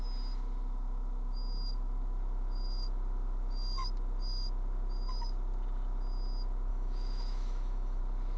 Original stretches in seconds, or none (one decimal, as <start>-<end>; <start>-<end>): 0.0-6.7; 8.0-8.4